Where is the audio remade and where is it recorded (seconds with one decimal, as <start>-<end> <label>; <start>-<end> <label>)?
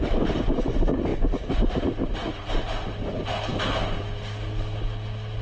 0.0-5.4 recorded